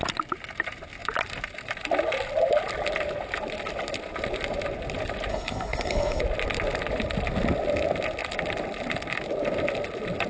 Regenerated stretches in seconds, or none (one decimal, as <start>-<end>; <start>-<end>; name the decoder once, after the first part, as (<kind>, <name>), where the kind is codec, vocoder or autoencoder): 5.3-6.2 (codec, HILCodec)